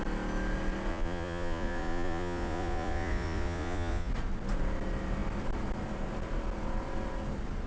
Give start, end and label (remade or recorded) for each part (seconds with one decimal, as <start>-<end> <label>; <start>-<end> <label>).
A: 0.0-0.9 recorded; 0.9-4.1 remade; 4.1-7.7 recorded